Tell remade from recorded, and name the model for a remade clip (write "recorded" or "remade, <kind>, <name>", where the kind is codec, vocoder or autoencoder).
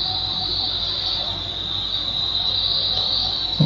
recorded